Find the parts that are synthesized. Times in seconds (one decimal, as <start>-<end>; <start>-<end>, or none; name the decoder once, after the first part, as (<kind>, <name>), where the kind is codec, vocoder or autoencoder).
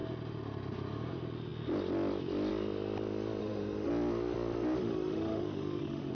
3.4-3.9 (autoencoder, DAC-VAE); 4.8-6.1